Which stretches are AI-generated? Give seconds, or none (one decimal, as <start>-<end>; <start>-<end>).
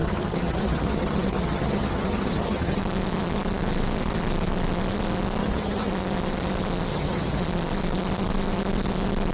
0.0-2.8; 5.4-5.9; 6.9-7.4